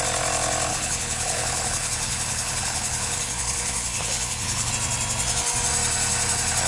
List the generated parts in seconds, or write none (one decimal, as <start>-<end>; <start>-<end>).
0.7-4.7